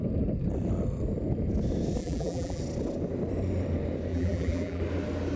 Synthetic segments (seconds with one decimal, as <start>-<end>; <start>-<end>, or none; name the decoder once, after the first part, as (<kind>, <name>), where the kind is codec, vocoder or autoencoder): 2.0-2.6 (vocoder, BigVGAN v2); 4.1-4.8